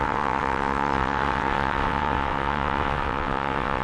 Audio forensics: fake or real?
fake